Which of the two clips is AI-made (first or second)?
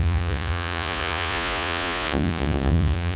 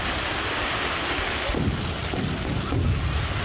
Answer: first